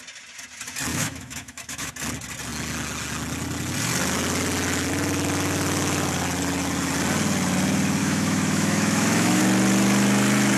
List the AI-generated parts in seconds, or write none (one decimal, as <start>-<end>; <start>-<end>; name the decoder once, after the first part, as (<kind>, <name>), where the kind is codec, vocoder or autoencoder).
0.9-1.9 (autoencoder, DAC-VAE); 8.0-9.4